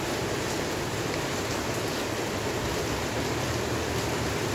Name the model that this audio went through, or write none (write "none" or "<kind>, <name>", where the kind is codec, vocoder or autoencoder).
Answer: vocoder, BigVGAN v2